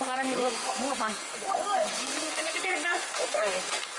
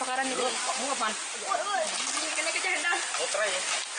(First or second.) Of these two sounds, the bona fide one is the second